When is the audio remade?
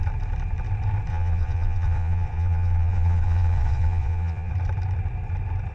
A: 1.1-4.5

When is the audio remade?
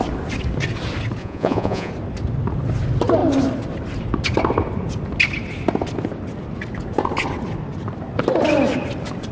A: 1.2-1.9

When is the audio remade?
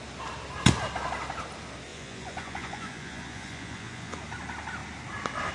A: 1.9-4.2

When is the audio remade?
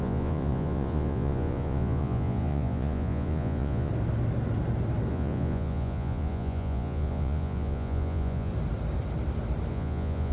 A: 0.0-3.9; 5.1-8.5; 9.7-10.3